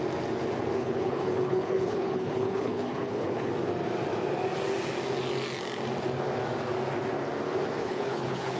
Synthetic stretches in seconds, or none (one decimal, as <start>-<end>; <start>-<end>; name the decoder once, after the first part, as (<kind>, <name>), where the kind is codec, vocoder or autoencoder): 0.8-3.5 (codec, HILCodec); 7.8-8.6